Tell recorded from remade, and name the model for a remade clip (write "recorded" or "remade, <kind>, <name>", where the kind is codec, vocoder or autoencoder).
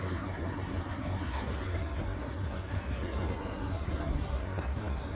remade, codec, SNAC